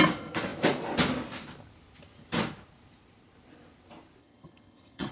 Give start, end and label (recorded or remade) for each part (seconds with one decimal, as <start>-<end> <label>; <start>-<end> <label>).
0.0-4.2 recorded; 4.2-5.1 remade